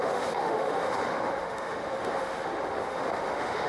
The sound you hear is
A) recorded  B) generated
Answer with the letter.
B